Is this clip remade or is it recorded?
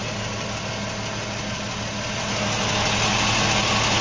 recorded